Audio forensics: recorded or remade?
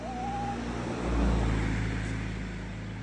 recorded